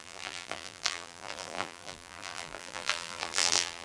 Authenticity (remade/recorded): remade